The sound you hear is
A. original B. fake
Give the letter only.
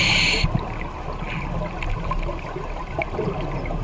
A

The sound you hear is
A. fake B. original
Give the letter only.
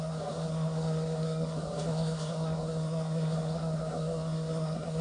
A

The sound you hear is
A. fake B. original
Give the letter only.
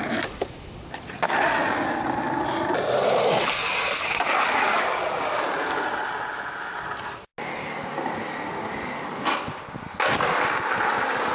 B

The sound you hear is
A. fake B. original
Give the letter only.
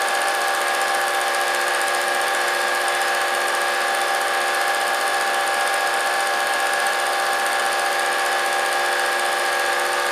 B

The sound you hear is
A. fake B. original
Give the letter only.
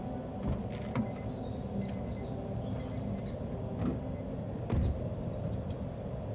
B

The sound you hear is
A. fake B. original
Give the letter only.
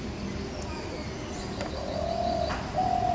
B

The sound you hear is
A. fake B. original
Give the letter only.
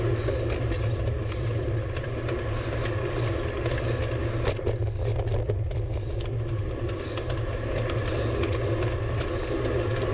B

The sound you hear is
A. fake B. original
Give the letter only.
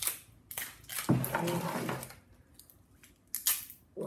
B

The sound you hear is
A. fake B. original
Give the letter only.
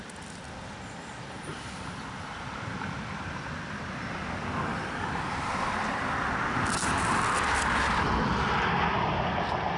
B